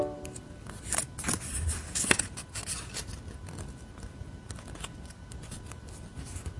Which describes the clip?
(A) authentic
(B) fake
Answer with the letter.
A